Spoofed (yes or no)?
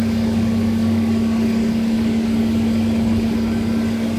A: yes